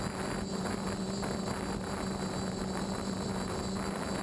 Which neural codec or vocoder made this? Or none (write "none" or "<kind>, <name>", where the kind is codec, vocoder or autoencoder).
none